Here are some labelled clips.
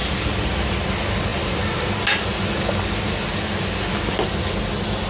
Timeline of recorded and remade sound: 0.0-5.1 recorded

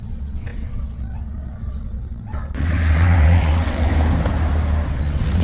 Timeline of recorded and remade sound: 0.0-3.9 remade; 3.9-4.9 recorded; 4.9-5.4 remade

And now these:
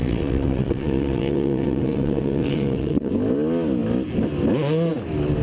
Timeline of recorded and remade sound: 0.0-3.1 remade; 3.1-5.4 recorded